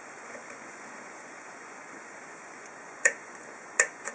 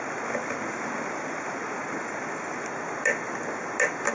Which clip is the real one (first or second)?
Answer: second